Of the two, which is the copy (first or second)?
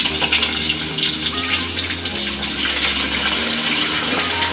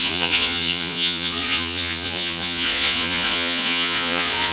second